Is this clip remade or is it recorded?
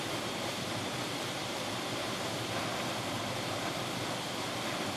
remade